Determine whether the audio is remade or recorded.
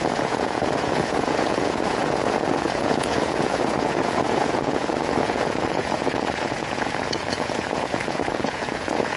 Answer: remade